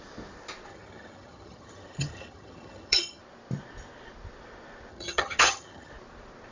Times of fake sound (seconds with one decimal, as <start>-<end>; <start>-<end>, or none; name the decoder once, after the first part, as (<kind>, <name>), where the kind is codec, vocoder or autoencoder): 0.7-3.2 (vocoder, HiFi-GAN); 4.9-5.9